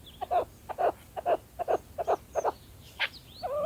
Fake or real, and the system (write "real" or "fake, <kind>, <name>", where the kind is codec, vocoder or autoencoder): real